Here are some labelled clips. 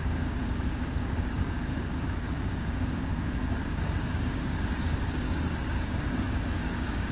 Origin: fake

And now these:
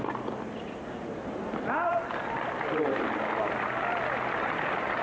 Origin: real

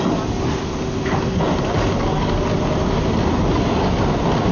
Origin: real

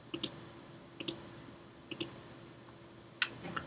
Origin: real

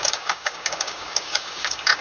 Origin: fake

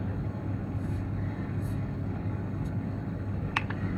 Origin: fake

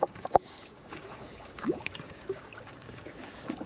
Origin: fake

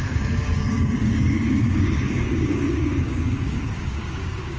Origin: fake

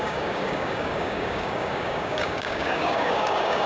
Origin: fake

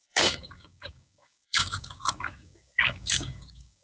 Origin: fake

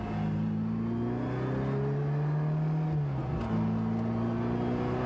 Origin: real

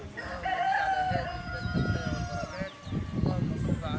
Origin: real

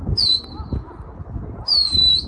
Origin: real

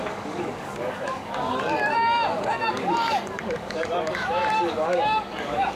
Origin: fake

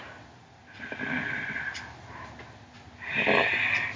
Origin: real